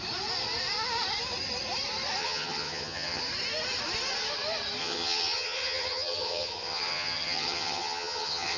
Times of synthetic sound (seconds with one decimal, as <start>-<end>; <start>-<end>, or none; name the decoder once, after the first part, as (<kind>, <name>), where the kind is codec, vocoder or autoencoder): 2.2-3.2 (vocoder, HiFi-GAN); 4.8-8.6